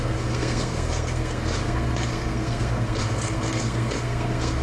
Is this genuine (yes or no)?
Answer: no